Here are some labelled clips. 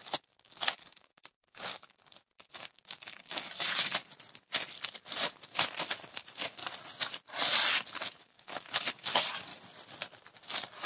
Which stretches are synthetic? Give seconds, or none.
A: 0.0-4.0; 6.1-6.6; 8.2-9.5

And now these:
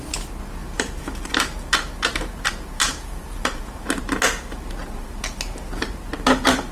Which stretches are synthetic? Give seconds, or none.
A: 0.6-4.0; 4.8-6.0

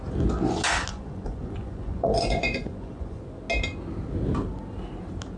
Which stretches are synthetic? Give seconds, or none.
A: 0.9-3.2

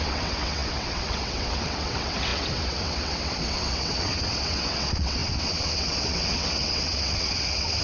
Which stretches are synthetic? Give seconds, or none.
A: 0.0-7.8